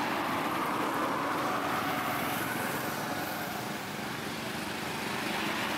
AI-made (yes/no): no